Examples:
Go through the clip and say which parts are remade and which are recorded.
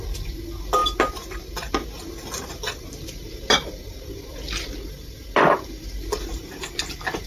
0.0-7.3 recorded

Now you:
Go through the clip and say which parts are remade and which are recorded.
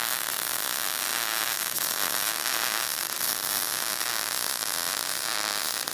0.0-1.1 recorded; 1.1-4.1 remade; 4.1-5.9 recorded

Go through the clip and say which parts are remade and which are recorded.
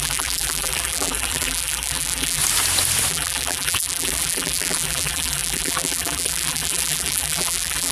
0.0-2.4 remade; 2.4-3.1 recorded; 3.1-7.9 remade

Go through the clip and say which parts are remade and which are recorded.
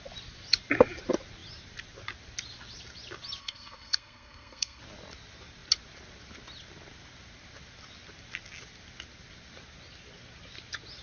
0.0-3.4 recorded; 3.4-4.8 remade; 4.8-11.0 recorded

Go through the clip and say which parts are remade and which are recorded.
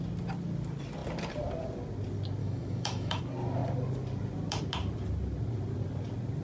0.0-2.4 recorded; 2.4-3.2 remade; 3.2-6.4 recorded